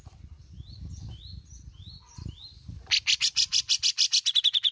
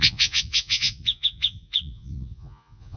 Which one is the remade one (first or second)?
second